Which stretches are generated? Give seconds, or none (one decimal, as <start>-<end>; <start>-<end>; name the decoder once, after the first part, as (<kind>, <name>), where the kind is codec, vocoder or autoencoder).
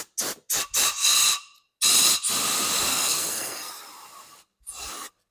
2.9-3.7 (codec, SNAC)